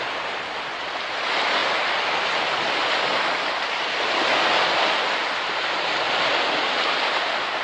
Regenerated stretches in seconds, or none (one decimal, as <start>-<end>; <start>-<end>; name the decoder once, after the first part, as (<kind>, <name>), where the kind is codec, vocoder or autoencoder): none